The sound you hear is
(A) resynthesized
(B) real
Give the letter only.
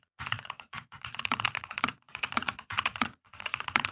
A